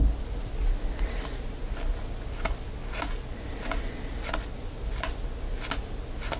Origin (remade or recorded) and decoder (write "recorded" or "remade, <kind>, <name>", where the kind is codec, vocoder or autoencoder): recorded